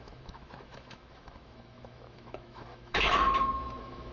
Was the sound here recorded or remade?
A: remade